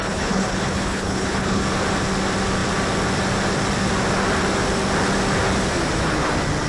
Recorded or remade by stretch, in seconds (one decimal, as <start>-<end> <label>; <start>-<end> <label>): 0.0-1.6 remade; 1.6-6.7 recorded